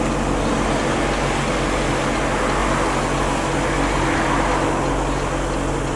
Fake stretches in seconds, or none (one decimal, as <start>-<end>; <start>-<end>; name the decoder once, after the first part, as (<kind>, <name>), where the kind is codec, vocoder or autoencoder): none